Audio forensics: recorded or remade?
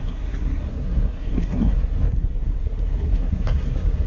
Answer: remade